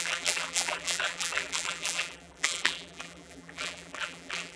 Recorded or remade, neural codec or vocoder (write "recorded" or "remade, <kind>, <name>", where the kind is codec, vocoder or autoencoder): remade, vocoder, BigVGAN v2